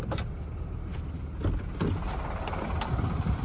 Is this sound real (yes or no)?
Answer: yes